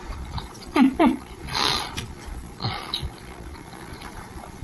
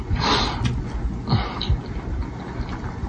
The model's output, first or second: first